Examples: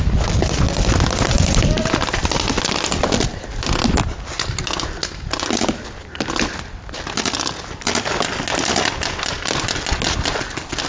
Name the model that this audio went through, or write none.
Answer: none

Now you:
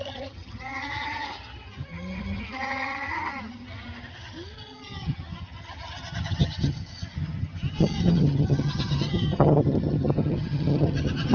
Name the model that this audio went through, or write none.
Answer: vocoder, HiFi-GAN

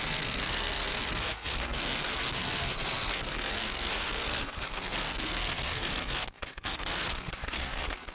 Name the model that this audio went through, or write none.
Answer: codec, SNAC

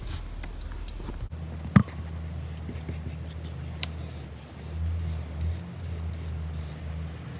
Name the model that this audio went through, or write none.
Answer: none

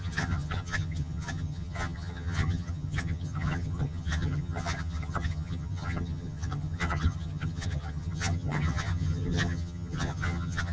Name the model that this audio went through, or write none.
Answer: vocoder, HiFi-GAN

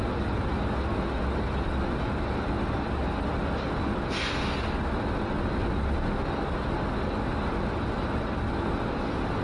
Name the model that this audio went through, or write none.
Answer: none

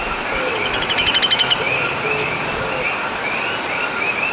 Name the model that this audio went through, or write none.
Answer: none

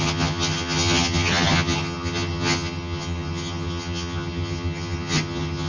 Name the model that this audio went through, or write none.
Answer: vocoder, HiFi-GAN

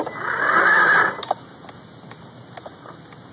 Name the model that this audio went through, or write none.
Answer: none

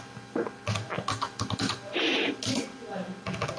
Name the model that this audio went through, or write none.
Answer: none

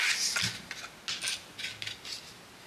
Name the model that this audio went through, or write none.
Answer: none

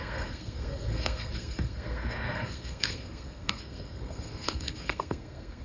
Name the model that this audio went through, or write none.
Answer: codec, SNAC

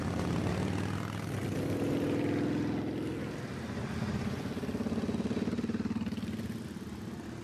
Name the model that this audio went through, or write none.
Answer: none